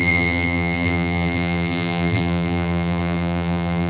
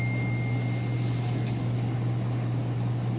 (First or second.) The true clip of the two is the second